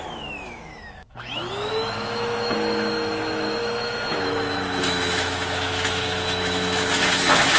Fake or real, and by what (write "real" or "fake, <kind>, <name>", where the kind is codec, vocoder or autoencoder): fake, autoencoder, DAC-VAE